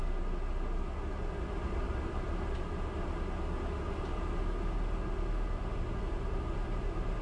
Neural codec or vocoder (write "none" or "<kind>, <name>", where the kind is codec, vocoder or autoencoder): none